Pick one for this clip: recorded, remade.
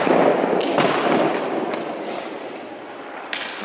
recorded